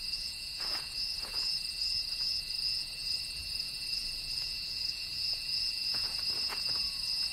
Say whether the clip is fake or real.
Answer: fake